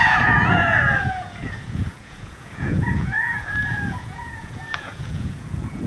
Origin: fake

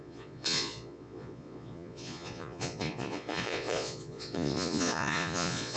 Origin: fake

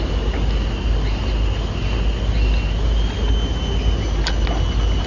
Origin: real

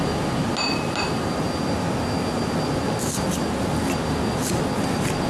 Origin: real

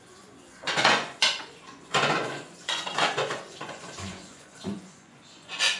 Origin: fake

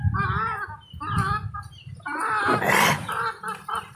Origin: real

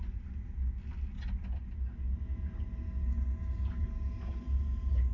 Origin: real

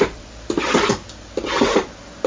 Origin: real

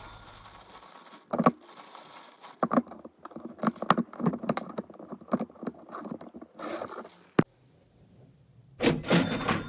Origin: real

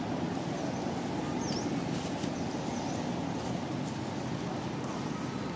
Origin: real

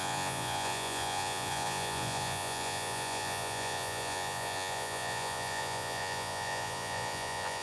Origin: fake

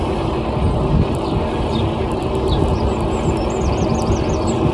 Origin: real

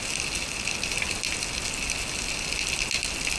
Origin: real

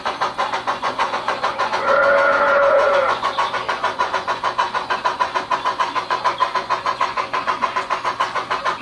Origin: fake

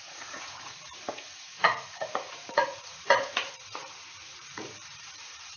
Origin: fake